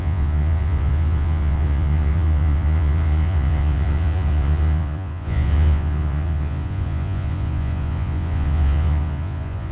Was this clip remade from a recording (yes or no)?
yes